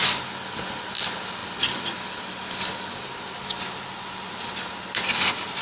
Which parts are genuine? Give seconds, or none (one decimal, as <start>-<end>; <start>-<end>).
0.0-5.6